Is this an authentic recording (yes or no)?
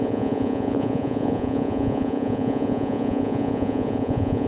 no